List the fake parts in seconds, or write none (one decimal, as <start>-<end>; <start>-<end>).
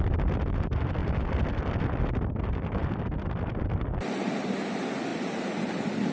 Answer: 1.0-3.0; 5.1-6.1